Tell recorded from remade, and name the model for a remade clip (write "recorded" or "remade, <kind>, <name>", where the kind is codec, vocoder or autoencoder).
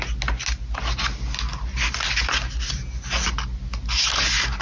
recorded